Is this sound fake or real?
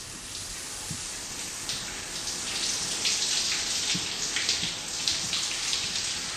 fake